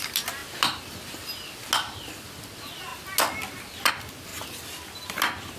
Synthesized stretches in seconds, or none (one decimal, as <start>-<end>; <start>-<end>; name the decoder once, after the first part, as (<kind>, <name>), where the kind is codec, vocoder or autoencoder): none